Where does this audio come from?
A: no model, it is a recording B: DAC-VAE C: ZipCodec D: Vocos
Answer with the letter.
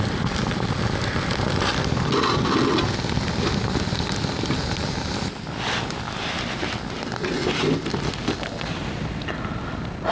A